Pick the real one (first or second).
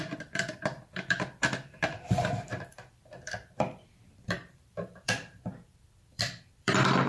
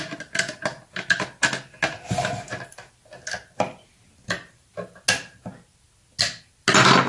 second